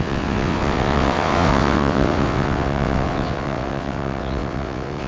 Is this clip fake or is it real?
fake